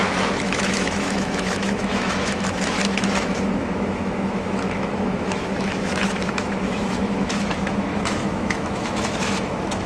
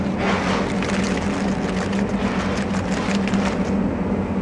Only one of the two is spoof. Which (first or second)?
first